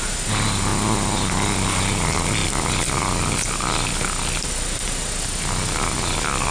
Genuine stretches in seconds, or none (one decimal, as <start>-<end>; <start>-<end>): 0.0-6.5